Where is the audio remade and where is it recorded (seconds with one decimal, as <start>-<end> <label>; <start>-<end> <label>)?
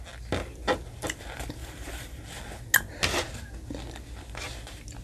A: 0.0-1.6 recorded; 1.6-2.2 remade; 2.2-5.0 recorded